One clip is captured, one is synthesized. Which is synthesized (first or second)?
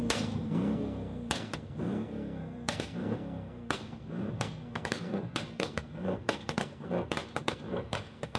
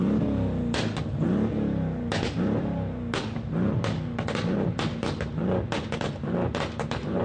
first